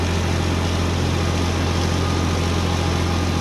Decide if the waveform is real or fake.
real